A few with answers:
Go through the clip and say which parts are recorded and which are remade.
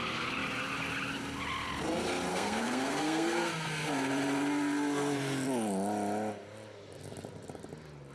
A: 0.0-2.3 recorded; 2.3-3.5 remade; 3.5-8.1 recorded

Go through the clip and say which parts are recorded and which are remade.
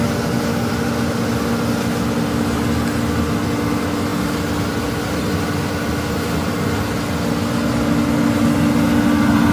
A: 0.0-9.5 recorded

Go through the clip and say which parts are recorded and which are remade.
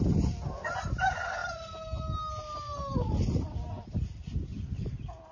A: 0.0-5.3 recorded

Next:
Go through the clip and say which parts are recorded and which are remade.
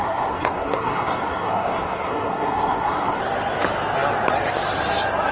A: 0.0-3.2 remade; 3.2-5.3 recorded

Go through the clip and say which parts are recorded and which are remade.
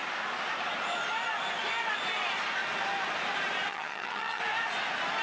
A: 0.0-3.7 recorded; 3.7-4.4 remade; 4.4-5.2 recorded